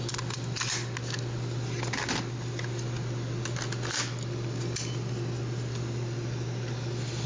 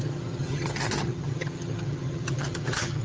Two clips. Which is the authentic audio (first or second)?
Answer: first